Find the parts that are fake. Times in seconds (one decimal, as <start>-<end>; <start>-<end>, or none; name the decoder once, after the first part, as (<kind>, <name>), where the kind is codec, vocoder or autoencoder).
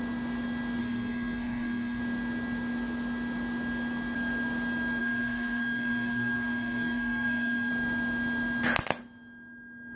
0.8-2.0 (codec, SNAC); 5.0-7.7